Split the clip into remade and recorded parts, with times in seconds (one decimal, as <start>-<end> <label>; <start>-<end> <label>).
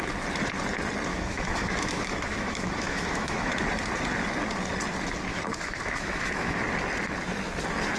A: 0.0-1.1 recorded; 1.1-3.5 remade; 3.5-5.3 recorded; 5.3-6.6 remade; 6.6-8.0 recorded